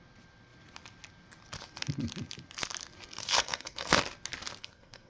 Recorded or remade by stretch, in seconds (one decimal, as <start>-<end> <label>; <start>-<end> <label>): 0.0-3.2 recorded; 3.2-4.0 remade; 4.0-4.6 recorded; 4.6-5.1 remade